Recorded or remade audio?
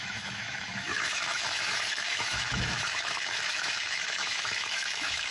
remade